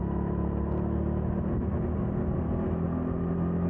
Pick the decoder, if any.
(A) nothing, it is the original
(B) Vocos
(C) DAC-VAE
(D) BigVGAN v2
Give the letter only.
A